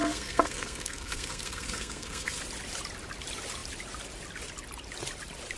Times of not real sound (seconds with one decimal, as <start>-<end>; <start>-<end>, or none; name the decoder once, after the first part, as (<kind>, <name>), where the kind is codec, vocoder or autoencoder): 0.0-2.4 (codec, SNAC)